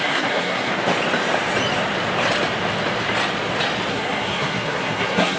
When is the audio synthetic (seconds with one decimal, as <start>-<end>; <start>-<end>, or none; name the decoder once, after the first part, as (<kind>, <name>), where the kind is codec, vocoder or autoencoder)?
0.0-0.7 (codec, SNAC); 3.9-5.4